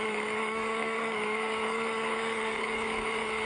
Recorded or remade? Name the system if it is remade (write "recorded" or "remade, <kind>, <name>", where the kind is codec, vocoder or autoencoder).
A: remade, codec, DAC